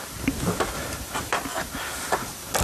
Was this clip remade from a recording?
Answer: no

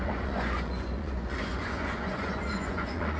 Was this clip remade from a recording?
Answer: yes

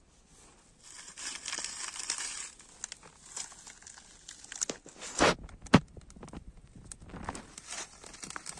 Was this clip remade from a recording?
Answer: no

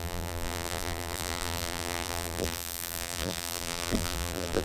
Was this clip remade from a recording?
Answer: yes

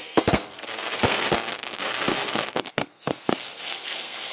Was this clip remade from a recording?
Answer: yes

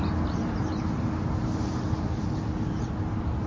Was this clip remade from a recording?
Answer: no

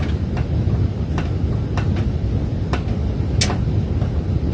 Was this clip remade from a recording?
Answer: no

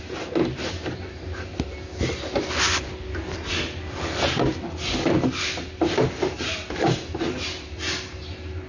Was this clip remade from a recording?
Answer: no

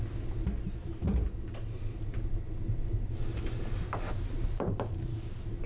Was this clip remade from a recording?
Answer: no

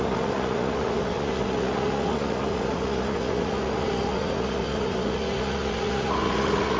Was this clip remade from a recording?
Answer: yes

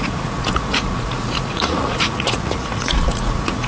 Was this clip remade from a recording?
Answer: yes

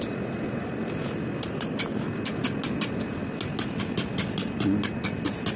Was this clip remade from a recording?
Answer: no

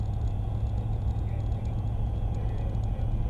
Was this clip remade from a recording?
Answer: yes